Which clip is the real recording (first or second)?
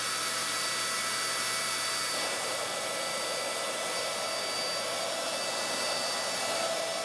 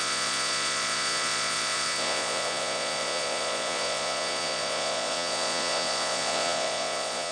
first